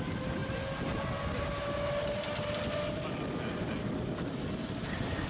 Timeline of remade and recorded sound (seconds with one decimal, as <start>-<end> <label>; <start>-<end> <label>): 0.0-5.3 recorded